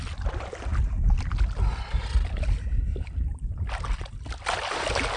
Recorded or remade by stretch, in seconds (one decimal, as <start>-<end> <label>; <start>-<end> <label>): 0.0-5.2 recorded